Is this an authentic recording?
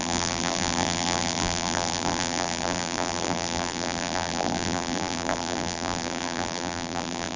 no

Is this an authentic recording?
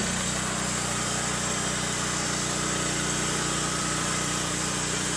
no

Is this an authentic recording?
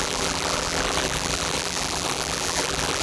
no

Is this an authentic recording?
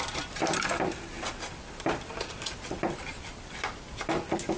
no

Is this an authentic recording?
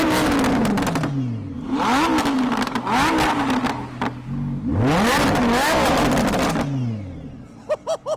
yes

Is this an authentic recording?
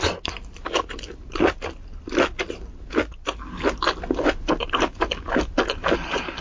yes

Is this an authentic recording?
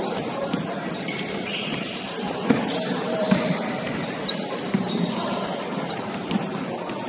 no